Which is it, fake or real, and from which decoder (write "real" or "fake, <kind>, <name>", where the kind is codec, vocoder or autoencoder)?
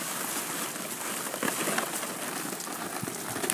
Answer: real